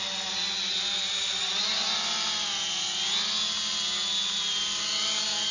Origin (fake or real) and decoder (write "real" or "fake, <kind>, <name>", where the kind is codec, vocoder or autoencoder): real